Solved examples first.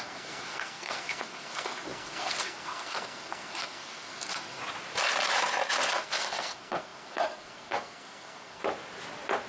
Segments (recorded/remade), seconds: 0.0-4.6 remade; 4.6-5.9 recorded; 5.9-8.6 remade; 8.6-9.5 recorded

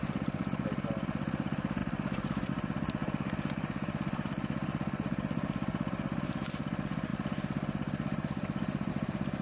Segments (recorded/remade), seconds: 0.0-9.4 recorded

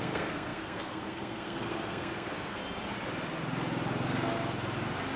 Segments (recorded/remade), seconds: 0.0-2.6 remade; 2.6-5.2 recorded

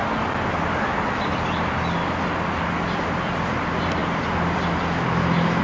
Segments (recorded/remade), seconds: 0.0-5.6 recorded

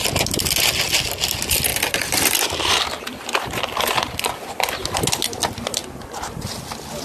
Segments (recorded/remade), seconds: 0.0-1.7 recorded; 1.7-4.7 remade; 4.7-7.0 recorded

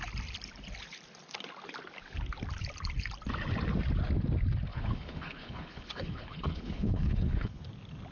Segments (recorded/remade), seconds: 0.0-4.7 recorded; 4.7-7.6 remade; 7.6-8.1 recorded

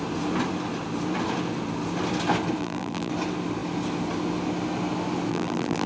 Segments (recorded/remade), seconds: 0.0-2.6 recorded; 2.6-3.1 remade; 3.1-5.3 recorded; 5.3-5.9 remade

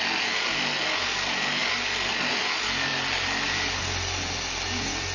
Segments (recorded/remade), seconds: 0.0-5.1 recorded